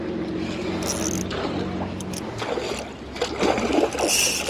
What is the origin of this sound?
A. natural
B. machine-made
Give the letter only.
A